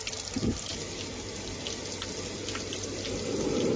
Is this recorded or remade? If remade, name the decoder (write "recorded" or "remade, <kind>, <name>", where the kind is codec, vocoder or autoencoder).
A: recorded